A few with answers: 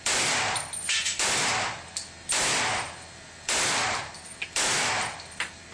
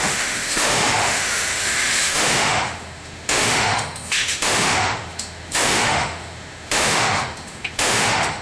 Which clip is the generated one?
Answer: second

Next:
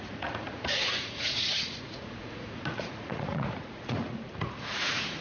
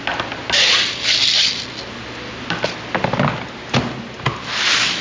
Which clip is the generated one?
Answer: first